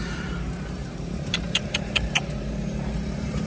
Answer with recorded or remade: remade